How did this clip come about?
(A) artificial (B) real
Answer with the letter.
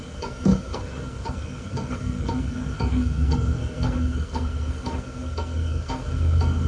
A